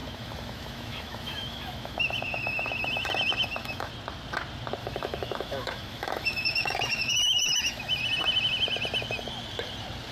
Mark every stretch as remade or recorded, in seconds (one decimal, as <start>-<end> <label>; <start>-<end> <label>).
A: 0.0-3.9 remade; 3.9-4.8 recorded; 4.8-8.0 remade; 8.0-10.1 recorded

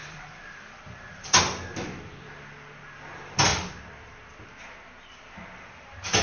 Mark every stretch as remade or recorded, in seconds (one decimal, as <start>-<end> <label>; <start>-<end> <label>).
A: 0.0-1.4 remade; 1.4-6.2 recorded

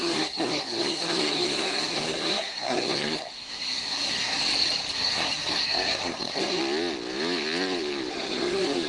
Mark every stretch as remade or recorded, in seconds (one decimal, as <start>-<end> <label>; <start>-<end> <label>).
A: 0.0-4.4 remade; 4.4-4.9 recorded; 4.9-6.6 remade; 6.6-8.1 recorded; 8.1-8.9 remade